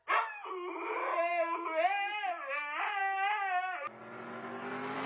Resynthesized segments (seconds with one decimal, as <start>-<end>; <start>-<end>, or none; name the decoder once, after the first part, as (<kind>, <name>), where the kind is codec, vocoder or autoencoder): none